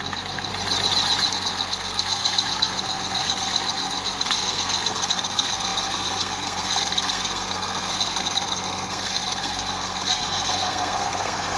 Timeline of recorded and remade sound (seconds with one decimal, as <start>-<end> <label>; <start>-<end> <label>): 0.0-0.5 remade; 0.5-1.3 recorded; 1.3-11.6 remade